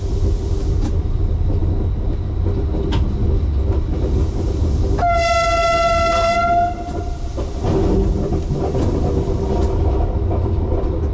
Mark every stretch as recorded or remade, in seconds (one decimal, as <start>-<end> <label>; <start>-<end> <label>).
0.0-11.1 recorded